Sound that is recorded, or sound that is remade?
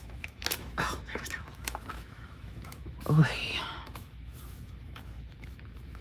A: remade